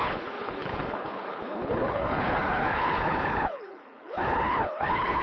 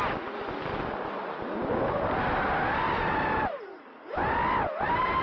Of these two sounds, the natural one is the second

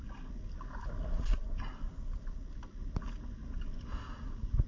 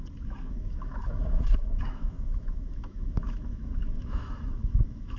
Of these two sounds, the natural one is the first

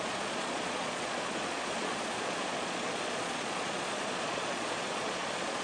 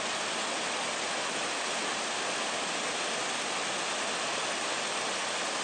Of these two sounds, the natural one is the second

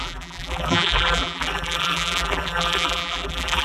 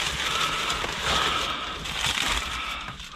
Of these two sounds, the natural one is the second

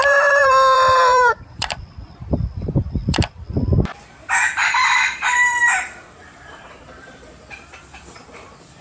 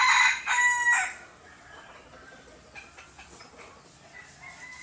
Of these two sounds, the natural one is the second